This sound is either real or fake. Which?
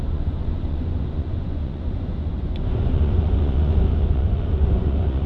fake